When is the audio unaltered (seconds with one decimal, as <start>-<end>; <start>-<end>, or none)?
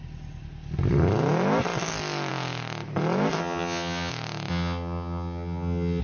0.0-3.4; 4.1-4.5